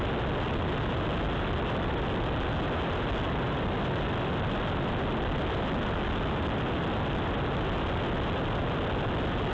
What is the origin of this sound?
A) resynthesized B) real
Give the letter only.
B